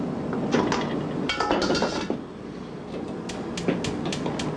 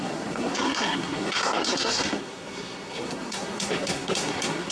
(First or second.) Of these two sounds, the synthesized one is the second